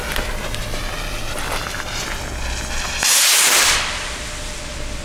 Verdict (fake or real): real